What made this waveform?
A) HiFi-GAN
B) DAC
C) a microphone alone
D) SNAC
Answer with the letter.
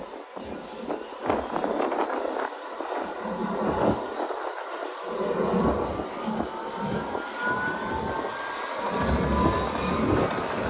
C